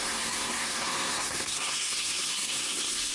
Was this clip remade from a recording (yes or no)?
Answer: yes